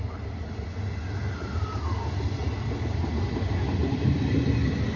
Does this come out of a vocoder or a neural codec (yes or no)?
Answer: no